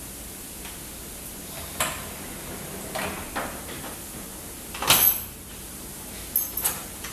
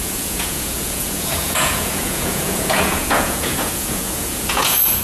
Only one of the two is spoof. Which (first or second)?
second